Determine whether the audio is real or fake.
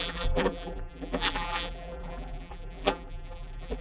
fake